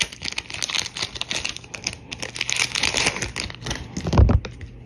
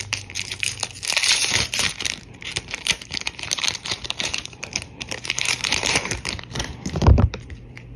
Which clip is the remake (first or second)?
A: second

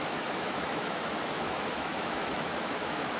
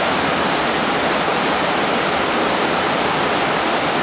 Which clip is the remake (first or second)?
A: first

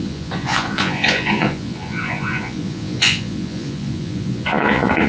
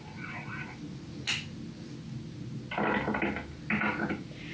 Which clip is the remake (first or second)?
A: first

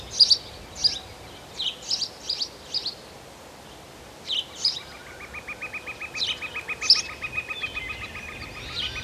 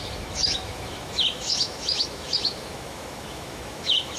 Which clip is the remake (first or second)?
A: second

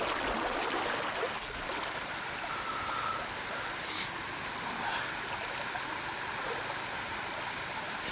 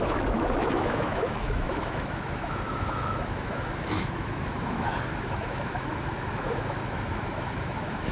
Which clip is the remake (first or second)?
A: second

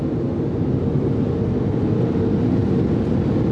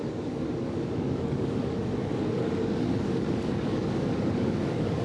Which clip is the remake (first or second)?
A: second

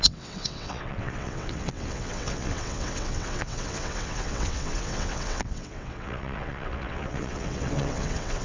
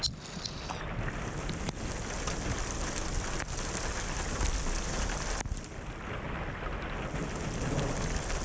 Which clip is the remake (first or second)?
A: first